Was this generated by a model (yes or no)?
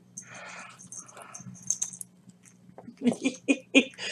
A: no